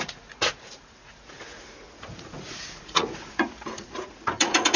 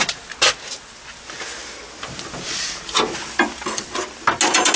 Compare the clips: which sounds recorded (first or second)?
second